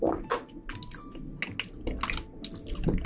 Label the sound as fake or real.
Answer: real